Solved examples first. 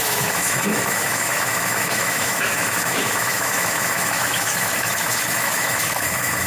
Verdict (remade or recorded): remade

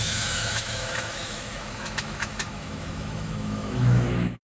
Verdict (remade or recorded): remade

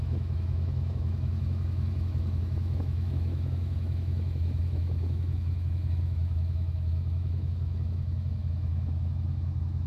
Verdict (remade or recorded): remade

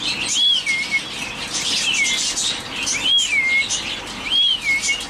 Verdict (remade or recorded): recorded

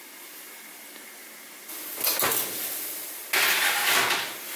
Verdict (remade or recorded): recorded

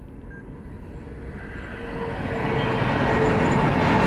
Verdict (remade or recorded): recorded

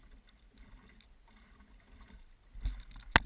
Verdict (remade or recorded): recorded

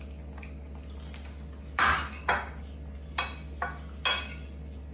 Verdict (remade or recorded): recorded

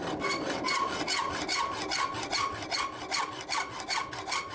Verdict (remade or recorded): recorded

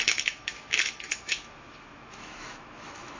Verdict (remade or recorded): remade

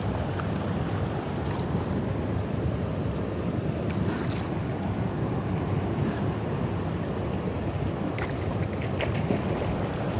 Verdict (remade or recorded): recorded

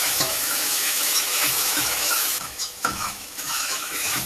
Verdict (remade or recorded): remade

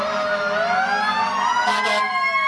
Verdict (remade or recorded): recorded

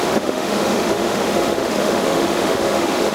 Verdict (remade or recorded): remade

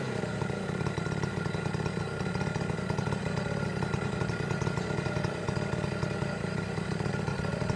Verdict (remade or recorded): recorded